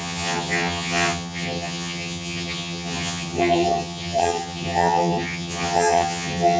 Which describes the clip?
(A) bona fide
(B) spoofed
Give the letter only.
B